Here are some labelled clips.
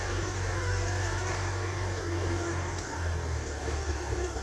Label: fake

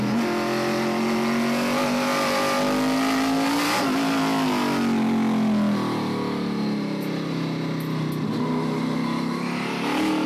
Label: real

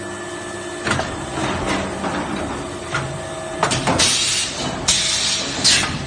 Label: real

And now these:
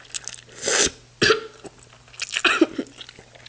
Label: real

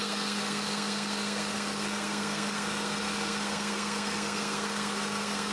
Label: fake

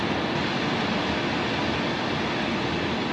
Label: real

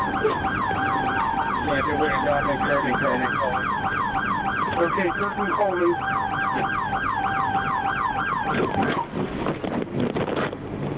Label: real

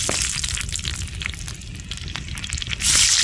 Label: real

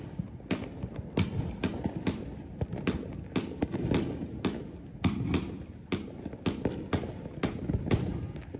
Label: real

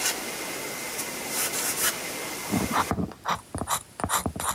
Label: real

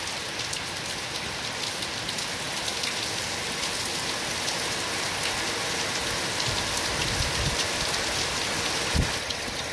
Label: real